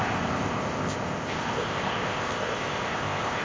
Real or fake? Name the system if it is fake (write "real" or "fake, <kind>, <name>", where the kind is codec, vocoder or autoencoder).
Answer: fake, codec, ZipCodec